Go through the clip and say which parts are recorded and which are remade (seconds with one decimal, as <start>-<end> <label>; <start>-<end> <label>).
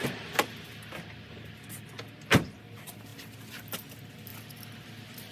0.0-5.3 recorded